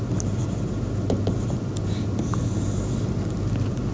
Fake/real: real